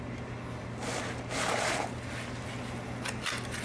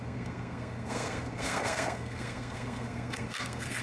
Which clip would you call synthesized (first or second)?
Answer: second